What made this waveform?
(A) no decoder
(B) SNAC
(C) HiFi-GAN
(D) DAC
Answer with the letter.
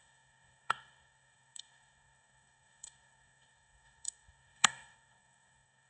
D